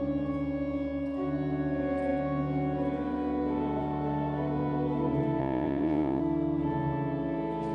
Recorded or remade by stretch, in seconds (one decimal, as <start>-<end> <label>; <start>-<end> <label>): 0.0-5.4 recorded; 5.4-6.2 remade; 6.2-7.7 recorded